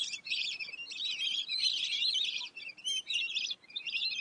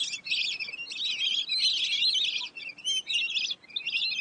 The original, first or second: second